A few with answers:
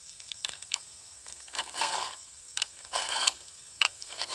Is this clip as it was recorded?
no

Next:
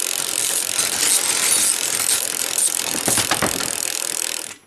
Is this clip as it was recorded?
yes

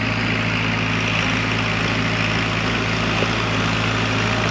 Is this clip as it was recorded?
yes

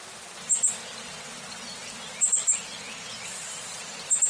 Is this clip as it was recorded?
yes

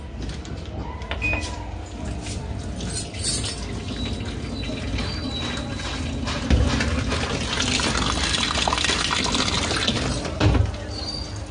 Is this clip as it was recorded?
yes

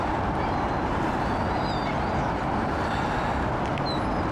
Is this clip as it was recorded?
yes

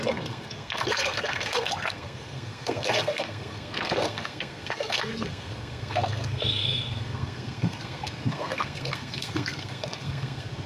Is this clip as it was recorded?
no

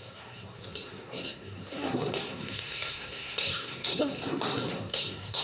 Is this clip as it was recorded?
no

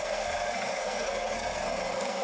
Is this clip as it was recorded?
no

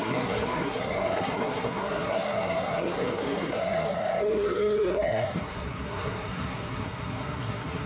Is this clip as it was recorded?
no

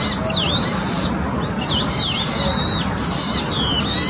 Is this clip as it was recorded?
yes